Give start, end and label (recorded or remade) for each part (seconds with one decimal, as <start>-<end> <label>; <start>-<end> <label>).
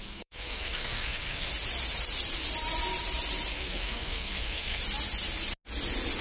0.0-1.5 remade; 1.5-3.5 recorded; 3.5-4.8 remade; 4.8-6.2 recorded